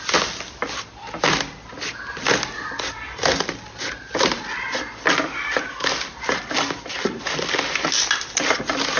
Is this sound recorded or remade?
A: recorded